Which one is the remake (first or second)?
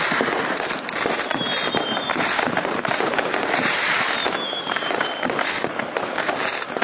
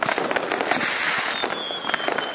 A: first